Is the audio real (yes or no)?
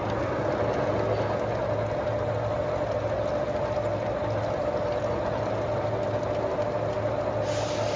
yes